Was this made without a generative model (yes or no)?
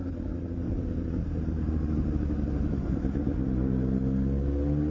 yes